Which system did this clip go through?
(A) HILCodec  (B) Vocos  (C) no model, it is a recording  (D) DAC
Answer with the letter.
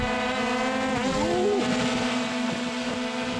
C